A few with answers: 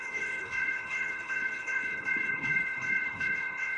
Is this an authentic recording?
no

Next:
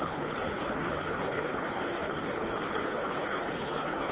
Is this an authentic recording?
no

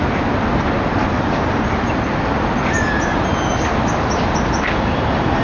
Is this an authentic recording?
yes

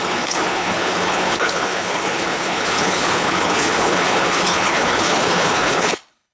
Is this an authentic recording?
no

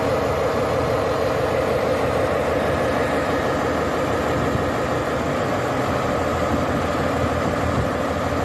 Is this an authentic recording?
yes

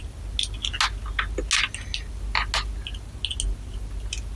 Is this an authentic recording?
yes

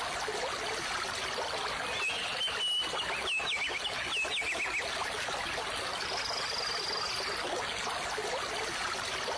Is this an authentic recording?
yes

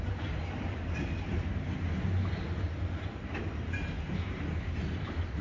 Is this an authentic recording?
yes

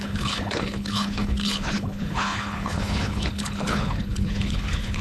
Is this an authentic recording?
no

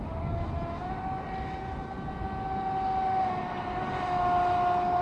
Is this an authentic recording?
yes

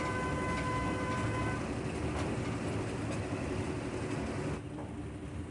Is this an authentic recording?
yes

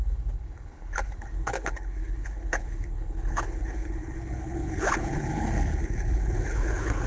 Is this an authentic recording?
no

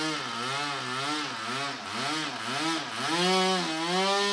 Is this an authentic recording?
yes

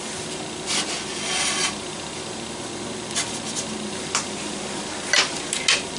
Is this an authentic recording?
yes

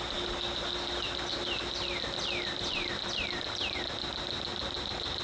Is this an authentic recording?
yes